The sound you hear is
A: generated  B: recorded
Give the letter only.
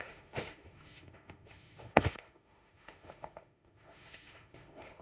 A